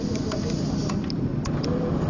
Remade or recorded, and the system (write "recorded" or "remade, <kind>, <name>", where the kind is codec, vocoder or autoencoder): recorded